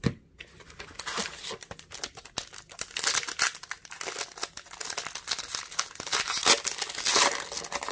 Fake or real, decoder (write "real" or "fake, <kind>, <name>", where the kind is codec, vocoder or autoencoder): real